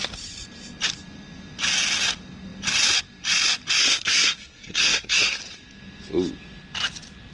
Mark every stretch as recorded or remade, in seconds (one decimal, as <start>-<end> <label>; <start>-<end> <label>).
0.0-3.8 recorded; 3.8-5.4 remade; 5.4-7.3 recorded